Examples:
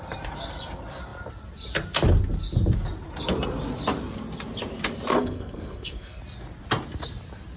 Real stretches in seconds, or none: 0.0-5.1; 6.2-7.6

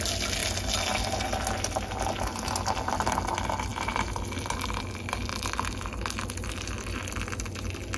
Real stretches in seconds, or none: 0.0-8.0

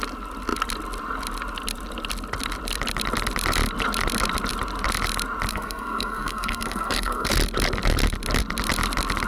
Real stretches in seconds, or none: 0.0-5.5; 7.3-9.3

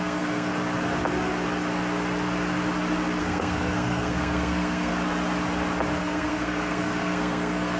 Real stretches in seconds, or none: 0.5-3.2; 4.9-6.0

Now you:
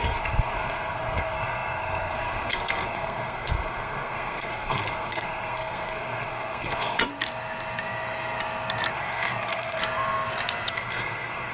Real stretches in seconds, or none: 7.1-8.9; 9.8-10.7